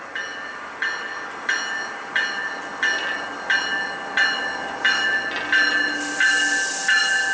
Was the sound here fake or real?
real